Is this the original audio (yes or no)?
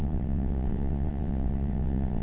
no